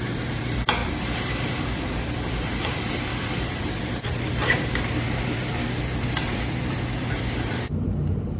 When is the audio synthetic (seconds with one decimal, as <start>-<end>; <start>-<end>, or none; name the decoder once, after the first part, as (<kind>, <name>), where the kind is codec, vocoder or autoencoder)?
0.0-8.4 (vocoder, BigVGAN v2)